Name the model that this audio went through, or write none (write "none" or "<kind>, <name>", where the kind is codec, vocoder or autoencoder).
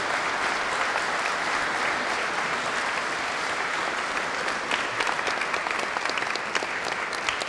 none